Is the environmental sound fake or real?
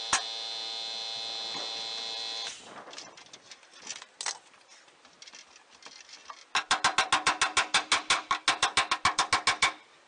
real